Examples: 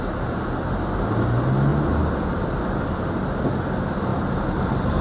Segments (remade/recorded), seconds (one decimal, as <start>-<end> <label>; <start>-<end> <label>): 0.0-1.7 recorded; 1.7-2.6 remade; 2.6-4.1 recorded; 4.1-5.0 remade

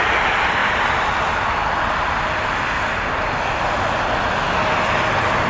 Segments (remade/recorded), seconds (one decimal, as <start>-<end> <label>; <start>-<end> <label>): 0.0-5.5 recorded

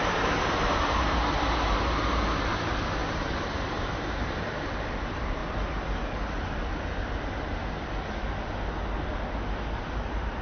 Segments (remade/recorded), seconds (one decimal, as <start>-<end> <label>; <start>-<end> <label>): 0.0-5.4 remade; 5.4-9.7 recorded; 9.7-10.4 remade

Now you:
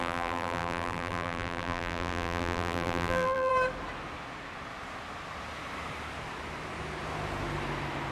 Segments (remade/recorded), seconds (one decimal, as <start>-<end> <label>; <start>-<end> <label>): 0.0-3.5 remade; 3.5-8.1 recorded

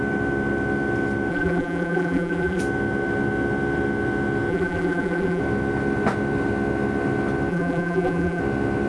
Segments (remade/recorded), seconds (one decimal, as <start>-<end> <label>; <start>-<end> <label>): 0.0-1.3 recorded; 1.3-2.6 remade; 2.6-4.5 recorded; 4.5-5.4 remade; 5.4-7.5 recorded; 7.5-8.4 remade; 8.4-8.9 recorded

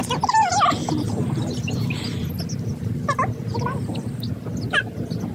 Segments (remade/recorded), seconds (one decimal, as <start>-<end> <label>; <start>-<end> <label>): 0.0-5.3 recorded

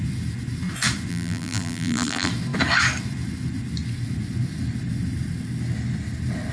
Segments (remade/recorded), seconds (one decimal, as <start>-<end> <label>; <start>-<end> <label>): 0.0-1.1 recorded; 1.1-2.3 remade; 2.3-6.5 recorded

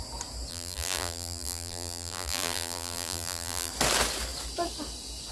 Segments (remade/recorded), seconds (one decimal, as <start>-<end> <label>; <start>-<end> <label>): 0.0-0.5 recorded; 0.5-3.7 remade; 3.7-5.3 recorded